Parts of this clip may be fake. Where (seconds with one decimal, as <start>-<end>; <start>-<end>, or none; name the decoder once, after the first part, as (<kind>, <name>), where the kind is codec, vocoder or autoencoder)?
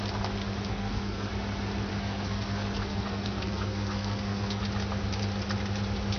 0.7-1.3 (codec, SNAC); 1.9-4.6